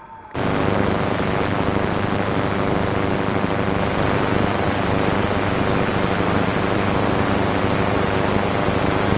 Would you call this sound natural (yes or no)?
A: yes